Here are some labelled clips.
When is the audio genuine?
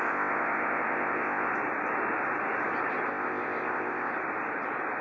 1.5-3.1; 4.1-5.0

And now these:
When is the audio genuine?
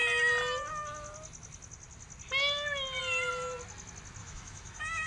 0.0-4.2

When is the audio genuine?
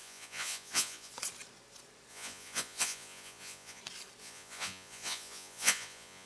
1.1-2.1; 3.8-4.2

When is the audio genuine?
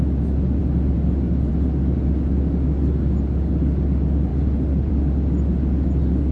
0.0-6.3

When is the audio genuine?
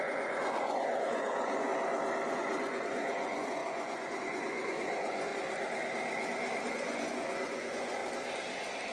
1.7-2.3; 5.3-6.7; 8.0-8.9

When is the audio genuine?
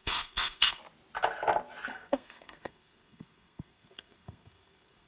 0.8-1.9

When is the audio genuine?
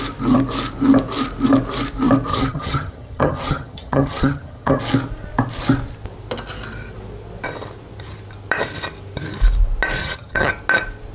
0.0-2.3; 4.8-10.0; 10.5-11.1